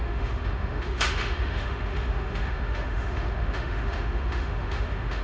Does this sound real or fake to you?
fake